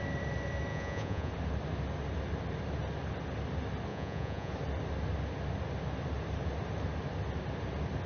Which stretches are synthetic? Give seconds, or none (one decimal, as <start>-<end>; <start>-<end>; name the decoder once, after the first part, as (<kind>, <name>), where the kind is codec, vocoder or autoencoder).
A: 0.7-1.3 (vocoder, Vocos); 3.9-4.5